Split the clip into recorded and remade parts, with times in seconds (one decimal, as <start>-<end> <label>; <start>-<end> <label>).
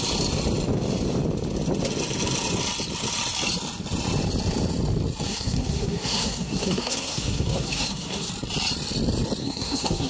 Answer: 0.0-5.3 recorded; 5.3-8.3 remade; 8.3-9.4 recorded; 9.4-10.1 remade